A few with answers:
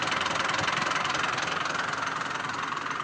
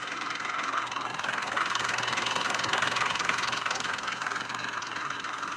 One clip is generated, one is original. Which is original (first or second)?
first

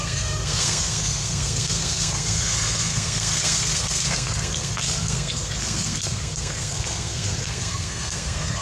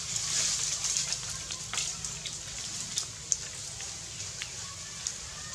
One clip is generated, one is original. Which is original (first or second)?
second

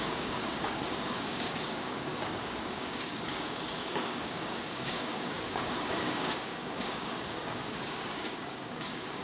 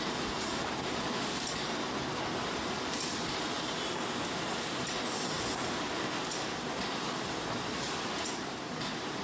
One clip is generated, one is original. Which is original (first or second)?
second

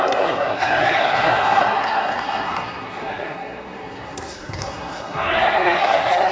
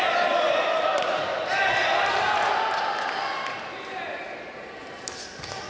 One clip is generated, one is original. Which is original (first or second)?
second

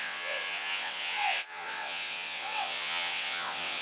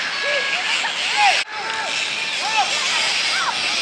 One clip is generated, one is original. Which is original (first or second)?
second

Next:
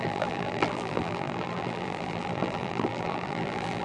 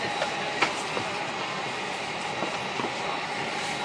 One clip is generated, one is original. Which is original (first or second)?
second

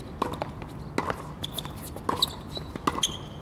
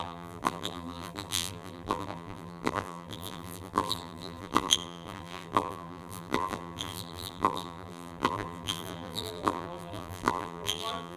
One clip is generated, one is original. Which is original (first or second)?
first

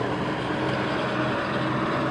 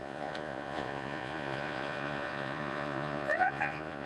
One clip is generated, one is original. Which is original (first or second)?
first